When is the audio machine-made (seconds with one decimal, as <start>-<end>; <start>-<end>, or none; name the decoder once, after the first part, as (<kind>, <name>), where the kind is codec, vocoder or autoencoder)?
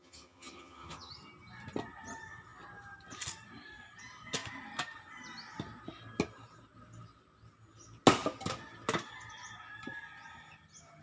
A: 0.0-1.1 (vocoder, HiFi-GAN)